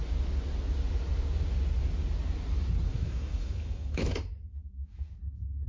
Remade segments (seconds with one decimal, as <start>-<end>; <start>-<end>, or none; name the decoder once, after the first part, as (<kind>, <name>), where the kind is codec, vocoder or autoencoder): 2.9-4.1 (autoencoder, DAC-VAE); 4.5-5.2